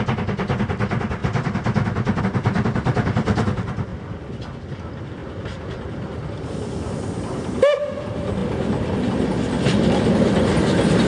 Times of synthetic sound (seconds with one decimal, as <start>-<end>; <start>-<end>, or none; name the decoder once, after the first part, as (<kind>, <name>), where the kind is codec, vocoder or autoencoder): 1.2-2.2 (vocoder, BigVGAN v2); 3.9-4.6; 5.2-6.6; 8.4-9.1